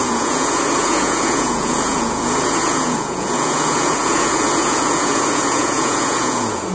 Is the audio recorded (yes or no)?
no